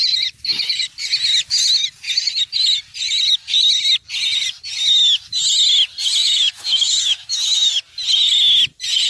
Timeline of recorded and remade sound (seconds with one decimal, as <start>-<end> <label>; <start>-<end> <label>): 0.0-6.2 recorded; 6.2-7.7 remade; 7.7-9.1 recorded